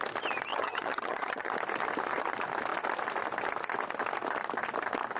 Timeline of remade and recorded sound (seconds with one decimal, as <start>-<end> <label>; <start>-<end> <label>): 0.0-0.5 recorded; 0.5-1.5 remade; 1.5-5.2 recorded